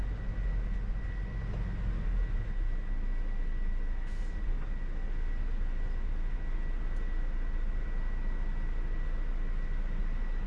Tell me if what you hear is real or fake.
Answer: real